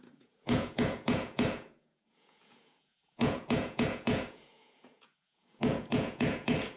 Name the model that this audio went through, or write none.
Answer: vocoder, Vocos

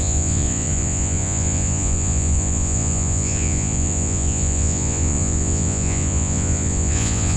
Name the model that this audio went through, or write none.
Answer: vocoder, Vocos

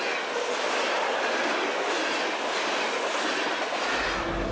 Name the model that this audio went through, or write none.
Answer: none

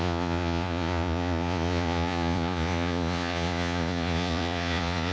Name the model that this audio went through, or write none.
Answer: vocoder, Vocos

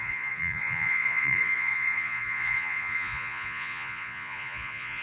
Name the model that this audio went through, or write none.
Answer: vocoder, Vocos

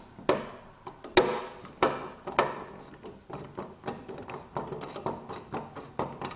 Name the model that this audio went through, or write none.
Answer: none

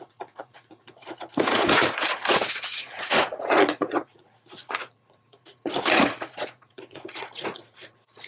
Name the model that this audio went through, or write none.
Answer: vocoder, Vocos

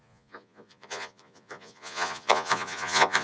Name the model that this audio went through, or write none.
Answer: vocoder, Vocos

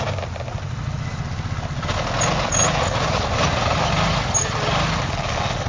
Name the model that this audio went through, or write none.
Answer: none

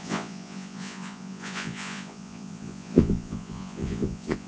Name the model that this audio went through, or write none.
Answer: vocoder, Vocos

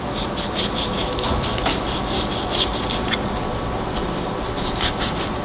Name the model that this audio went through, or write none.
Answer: none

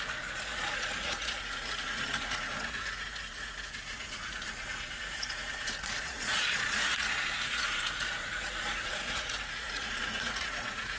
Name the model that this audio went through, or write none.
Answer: vocoder, Vocos